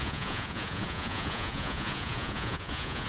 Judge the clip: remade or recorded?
remade